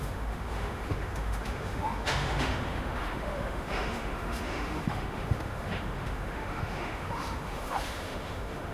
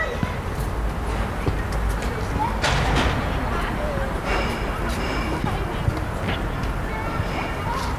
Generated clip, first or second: first